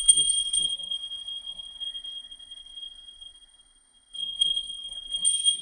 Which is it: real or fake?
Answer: fake